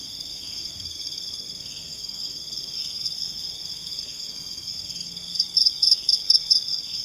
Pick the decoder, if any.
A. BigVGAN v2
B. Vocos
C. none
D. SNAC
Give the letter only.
D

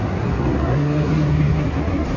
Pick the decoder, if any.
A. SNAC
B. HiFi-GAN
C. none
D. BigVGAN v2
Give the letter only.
A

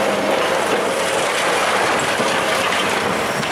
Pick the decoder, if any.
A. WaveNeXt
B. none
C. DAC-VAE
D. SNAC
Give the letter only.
B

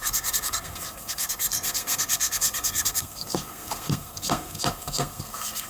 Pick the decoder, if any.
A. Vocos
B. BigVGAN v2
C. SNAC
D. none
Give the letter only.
C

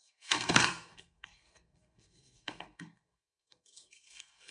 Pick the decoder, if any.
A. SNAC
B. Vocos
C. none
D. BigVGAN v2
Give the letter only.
A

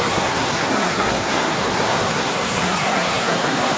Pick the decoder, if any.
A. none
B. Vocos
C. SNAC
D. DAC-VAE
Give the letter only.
C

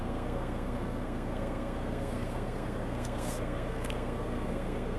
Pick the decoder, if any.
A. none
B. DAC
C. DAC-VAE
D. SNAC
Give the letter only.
D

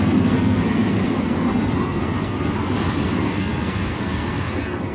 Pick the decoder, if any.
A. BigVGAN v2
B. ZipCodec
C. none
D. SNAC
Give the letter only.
D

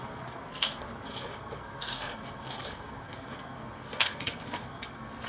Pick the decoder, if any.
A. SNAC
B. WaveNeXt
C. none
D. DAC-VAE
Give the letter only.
A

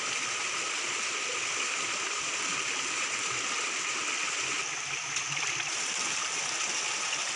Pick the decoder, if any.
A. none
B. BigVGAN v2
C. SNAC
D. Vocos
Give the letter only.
A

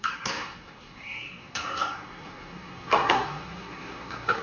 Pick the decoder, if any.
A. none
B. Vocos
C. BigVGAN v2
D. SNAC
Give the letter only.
D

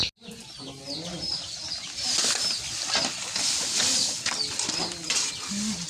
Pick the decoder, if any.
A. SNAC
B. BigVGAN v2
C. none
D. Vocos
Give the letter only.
C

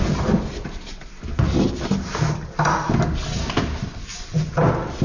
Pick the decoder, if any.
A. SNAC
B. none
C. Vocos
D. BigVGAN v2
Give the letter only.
B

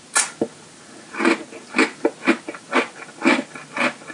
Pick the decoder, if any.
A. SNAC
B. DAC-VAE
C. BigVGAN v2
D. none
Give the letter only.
D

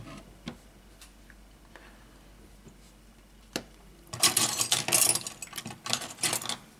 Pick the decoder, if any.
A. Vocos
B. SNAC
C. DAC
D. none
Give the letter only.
D